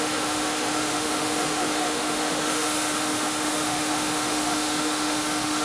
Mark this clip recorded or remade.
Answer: remade